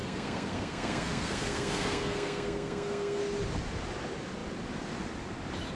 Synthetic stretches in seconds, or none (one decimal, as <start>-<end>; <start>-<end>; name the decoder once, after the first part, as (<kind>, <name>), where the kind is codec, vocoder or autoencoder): 0.0-3.2 (codec, SNAC)

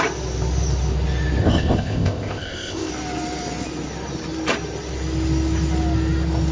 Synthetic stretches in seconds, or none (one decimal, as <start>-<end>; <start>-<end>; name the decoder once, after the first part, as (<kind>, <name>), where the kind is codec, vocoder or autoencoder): 1.4-2.9 (codec, ZipCodec)

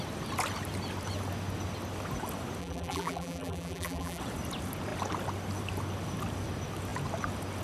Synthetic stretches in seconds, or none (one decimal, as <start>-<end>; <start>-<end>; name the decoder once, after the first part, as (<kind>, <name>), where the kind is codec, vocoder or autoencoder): 2.6-4.2 (vocoder, BigVGAN v2)

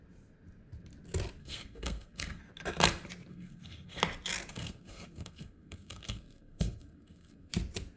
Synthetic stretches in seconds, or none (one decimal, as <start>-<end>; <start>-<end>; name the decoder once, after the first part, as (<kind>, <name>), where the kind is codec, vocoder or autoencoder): 1.4-2.4 (codec, SNAC); 3.3-4.0; 4.5-7.5

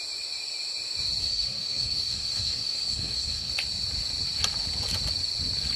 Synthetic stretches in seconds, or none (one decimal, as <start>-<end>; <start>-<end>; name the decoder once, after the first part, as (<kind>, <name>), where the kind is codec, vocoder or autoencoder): 1.2-3.5 (codec, SNAC)

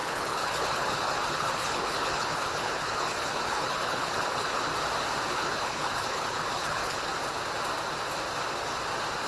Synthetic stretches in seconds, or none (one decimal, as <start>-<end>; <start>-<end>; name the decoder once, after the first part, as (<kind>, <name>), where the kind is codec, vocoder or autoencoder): 0.0-4.7 (codec, HILCodec); 5.3-7.1

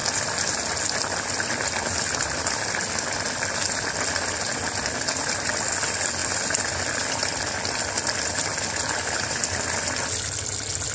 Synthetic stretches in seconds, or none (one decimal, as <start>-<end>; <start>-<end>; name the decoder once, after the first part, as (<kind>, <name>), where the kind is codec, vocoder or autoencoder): none